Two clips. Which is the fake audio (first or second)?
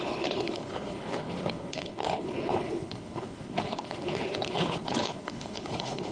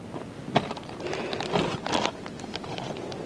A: first